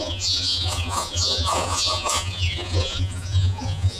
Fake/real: fake